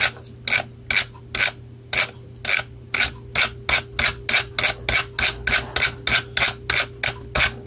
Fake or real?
real